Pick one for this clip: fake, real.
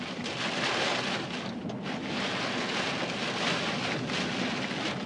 real